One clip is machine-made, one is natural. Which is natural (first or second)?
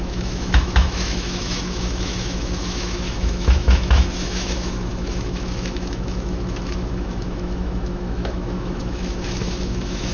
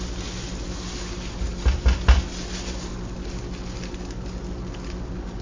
second